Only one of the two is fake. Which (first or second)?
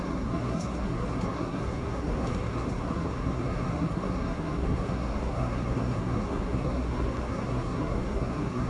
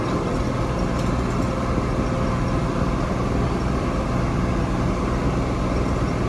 first